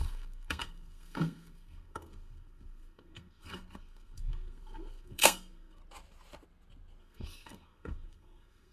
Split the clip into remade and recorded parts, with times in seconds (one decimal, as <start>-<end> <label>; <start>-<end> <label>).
0.0-5.8 remade; 5.8-7.0 recorded; 7.0-8.7 remade